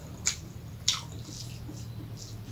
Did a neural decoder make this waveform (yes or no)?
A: no